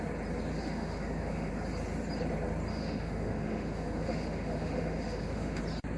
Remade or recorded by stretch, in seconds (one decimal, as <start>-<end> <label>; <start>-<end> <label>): 0.0-0.5 recorded; 0.5-1.5 remade; 1.5-2.7 recorded; 2.7-5.6 remade; 5.6-6.0 recorded